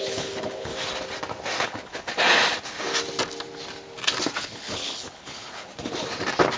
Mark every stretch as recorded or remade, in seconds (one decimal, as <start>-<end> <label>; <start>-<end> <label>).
0.0-0.7 remade; 0.7-1.6 recorded; 1.6-2.1 remade; 2.1-4.4 recorded; 4.4-5.7 remade; 5.7-6.6 recorded

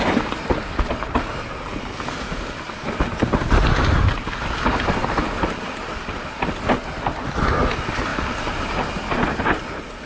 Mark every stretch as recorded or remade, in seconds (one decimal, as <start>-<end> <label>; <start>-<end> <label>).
0.0-10.1 recorded

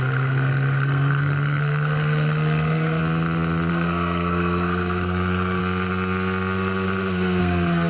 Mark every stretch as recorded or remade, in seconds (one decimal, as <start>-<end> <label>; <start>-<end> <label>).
0.0-3.0 remade; 3.0-3.7 recorded; 3.7-5.6 remade; 5.6-7.4 recorded; 7.4-7.9 remade